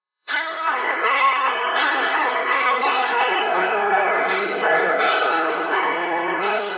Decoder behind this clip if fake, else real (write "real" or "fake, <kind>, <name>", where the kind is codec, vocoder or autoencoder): fake, codec, SNAC